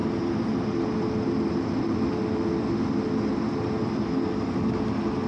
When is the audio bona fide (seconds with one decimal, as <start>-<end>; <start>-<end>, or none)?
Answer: 0.0-5.3